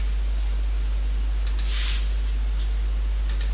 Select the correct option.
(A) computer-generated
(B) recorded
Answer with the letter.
B